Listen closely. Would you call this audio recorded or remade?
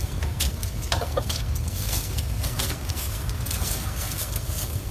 remade